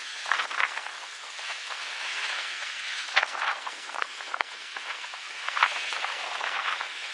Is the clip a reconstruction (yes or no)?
yes